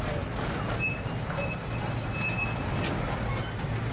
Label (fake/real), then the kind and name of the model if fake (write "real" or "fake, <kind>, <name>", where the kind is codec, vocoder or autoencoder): real